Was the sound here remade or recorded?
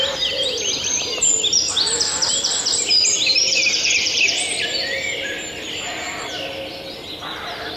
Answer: recorded